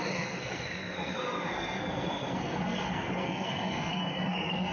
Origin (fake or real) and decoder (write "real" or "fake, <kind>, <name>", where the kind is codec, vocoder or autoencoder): fake, codec, SNAC